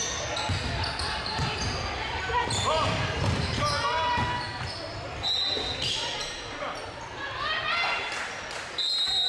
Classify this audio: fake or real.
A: real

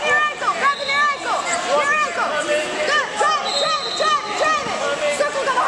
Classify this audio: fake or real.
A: real